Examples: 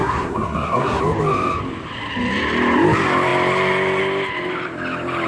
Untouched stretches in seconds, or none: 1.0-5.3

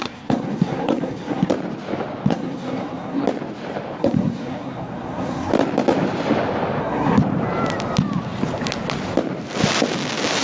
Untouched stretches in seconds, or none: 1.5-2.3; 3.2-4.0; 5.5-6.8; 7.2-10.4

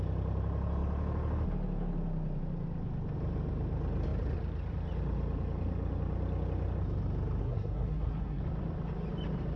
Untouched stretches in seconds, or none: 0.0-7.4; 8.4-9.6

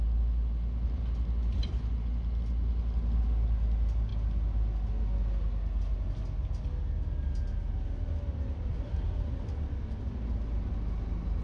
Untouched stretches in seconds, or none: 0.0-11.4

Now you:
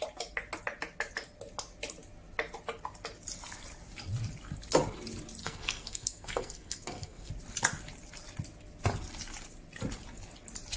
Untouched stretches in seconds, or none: 0.0-5.4; 7.3-10.8